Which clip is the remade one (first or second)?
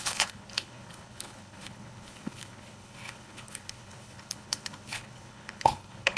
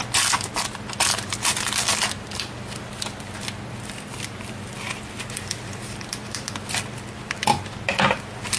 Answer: first